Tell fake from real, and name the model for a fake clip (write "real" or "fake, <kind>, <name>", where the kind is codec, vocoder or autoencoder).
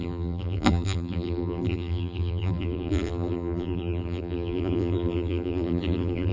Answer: fake, vocoder, BigVGAN v2